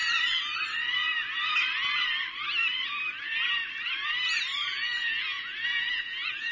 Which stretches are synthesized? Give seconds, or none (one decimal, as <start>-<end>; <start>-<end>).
4.7-6.5